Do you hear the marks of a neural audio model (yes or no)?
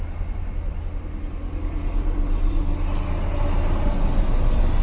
no